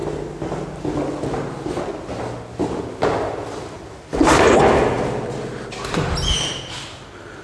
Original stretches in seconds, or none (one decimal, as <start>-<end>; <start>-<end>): 0.0-7.4